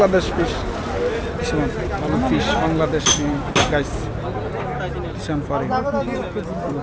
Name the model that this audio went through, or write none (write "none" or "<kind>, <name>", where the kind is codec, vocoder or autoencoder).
none